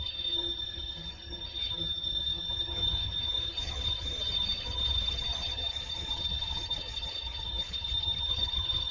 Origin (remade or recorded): remade